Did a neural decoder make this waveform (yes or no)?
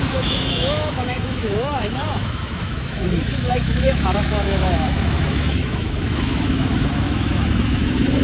yes